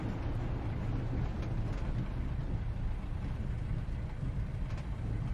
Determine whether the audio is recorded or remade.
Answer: recorded